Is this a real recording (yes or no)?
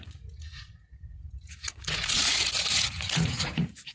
no